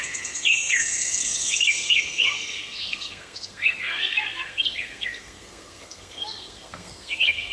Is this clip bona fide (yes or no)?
no